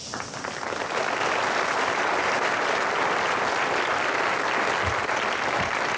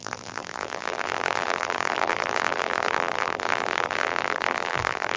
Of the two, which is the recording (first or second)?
first